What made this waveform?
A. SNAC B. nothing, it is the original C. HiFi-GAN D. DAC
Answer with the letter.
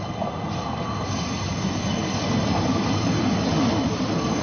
B